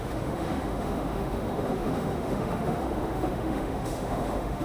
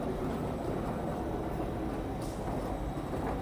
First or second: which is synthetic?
first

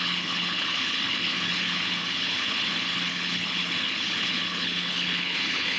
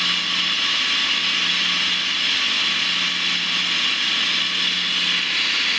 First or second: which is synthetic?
first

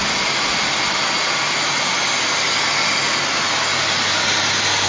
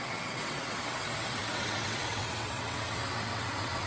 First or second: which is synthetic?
second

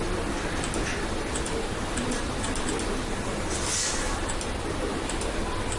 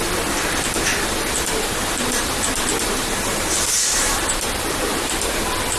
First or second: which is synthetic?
second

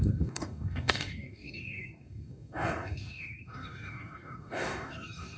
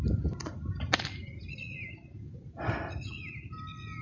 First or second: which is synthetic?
first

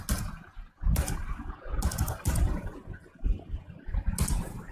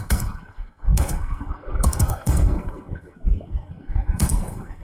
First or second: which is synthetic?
second